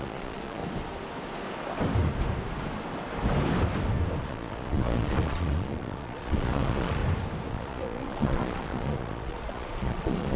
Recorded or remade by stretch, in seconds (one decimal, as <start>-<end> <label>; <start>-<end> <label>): 0.0-0.6 remade; 0.6-4.2 recorded; 4.2-7.0 remade; 7.0-7.5 recorded; 7.5-10.4 remade